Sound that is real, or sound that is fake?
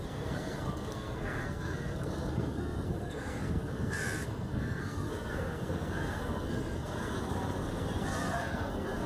fake